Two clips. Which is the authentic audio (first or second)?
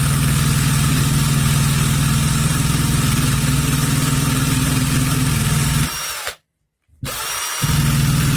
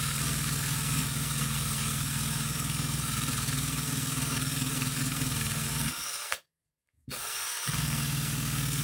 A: first